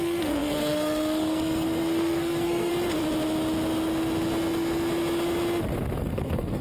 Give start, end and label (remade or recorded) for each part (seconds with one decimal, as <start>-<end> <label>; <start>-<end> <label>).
0.0-2.7 remade; 2.7-6.0 recorded; 6.0-6.6 remade